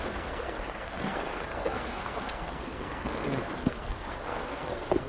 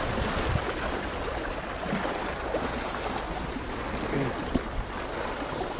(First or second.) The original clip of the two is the second